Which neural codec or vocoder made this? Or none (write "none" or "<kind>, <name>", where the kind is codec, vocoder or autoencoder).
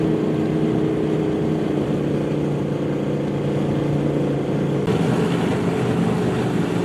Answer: none